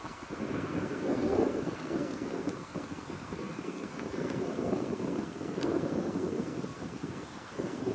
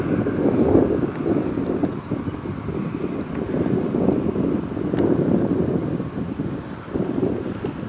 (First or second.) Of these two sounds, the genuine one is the second